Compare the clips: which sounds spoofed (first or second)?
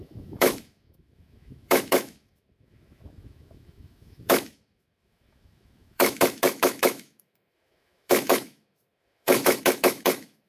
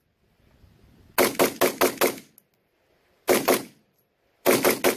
first